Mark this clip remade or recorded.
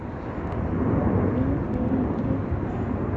recorded